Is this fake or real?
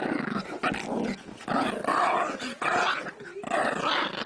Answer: real